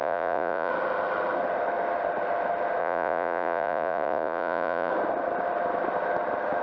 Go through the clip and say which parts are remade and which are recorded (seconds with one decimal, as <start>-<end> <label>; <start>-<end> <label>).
0.0-0.7 remade; 0.7-2.8 recorded; 2.8-4.9 remade; 4.9-6.6 recorded